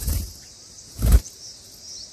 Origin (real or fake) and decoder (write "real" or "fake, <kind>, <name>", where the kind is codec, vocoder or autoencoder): real